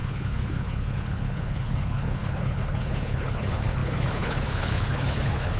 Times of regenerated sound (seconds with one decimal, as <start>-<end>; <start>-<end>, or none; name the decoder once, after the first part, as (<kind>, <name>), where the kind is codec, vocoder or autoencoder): 0.0-5.6 (codec, HILCodec)

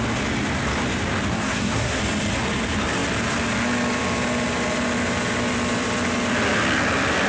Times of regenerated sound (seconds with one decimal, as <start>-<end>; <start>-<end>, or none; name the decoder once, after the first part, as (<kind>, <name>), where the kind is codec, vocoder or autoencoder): 1.3-2.0 (codec, SNAC)